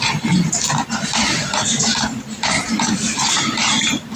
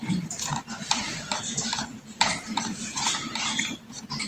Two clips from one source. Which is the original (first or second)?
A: first